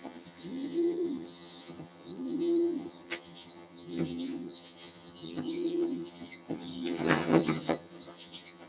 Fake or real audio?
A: fake